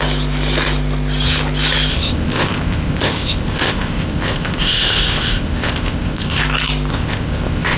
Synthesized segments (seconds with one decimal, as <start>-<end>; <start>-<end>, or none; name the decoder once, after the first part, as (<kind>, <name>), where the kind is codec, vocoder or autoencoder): 1.9-6.4 (codec, ZipCodec); 6.9-7.8